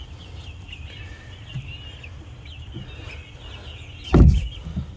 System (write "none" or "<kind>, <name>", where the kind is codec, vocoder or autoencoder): none